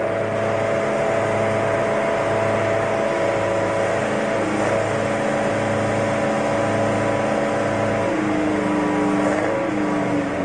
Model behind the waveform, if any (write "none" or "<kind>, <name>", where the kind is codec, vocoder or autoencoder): none